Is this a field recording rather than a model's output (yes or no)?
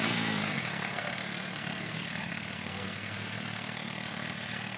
no